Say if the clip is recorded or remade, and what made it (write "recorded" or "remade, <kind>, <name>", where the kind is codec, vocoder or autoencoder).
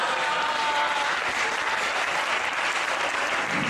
recorded